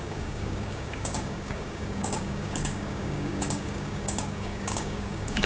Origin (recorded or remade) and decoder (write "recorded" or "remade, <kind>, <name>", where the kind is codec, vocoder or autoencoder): remade, codec, DAC